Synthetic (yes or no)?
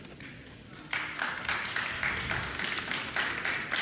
no